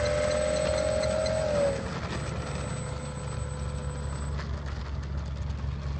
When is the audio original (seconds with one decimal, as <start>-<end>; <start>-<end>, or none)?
0.0-6.0